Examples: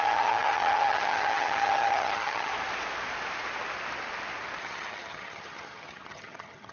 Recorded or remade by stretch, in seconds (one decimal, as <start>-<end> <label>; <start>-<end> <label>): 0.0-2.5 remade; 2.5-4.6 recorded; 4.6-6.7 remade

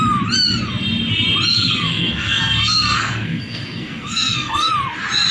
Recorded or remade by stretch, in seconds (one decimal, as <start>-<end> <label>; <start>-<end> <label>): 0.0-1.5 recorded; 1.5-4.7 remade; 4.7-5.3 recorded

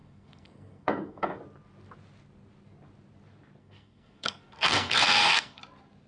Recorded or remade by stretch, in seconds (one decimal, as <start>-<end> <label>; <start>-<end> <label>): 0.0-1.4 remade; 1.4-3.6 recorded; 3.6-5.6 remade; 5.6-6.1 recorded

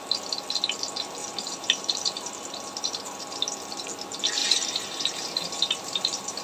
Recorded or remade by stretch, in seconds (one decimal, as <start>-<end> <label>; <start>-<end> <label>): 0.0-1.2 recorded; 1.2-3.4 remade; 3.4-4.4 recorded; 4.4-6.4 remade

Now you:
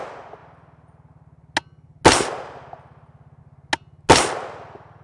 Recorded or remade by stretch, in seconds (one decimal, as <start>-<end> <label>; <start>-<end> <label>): 0.0-5.0 recorded

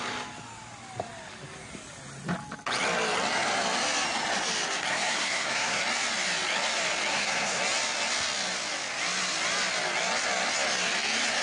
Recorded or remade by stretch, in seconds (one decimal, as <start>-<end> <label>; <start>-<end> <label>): 0.0-4.9 recorded; 4.9-5.8 remade; 5.8-7.1 recorded; 7.1-7.6 remade; 7.6-11.4 recorded

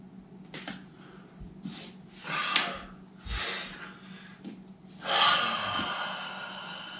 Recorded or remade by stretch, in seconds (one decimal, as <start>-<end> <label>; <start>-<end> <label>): 0.0-7.0 recorded

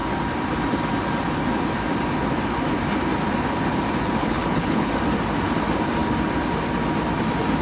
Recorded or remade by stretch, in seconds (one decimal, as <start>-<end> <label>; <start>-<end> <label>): 0.0-4.2 recorded; 4.2-4.9 remade; 4.9-7.6 recorded